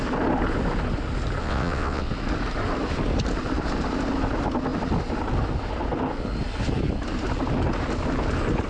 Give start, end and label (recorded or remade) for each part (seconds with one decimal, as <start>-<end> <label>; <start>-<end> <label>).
0.0-1.4 recorded; 1.4-2.1 remade; 2.1-8.7 recorded